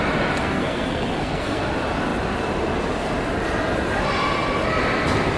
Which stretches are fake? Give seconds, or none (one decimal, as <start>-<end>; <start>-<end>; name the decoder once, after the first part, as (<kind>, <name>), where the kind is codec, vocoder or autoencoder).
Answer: 0.4-1.7 (codec, SNAC)